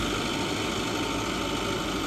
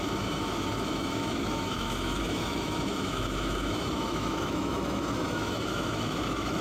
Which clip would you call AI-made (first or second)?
second